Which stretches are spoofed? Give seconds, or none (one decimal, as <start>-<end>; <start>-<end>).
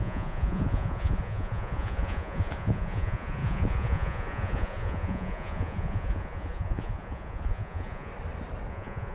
0.0-8.1; 8.7-9.1